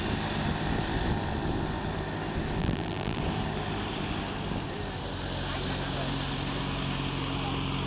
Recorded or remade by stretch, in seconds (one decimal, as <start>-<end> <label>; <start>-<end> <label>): 0.0-2.6 recorded; 2.6-3.2 remade; 3.2-7.9 recorded